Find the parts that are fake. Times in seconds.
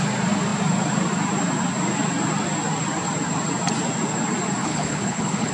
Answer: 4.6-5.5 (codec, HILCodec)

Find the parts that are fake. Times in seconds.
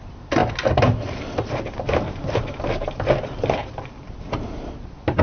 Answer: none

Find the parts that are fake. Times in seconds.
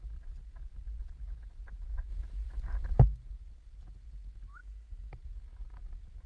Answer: 4.6-5.1 (autoencoder, DAC-VAE)